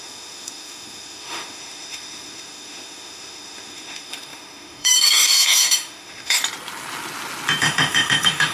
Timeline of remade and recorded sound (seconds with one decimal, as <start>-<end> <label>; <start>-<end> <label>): 0.0-6.4 remade; 6.4-7.6 recorded; 7.6-8.5 remade